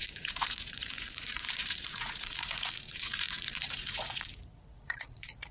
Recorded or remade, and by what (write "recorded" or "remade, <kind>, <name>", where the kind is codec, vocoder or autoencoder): remade, vocoder, Vocos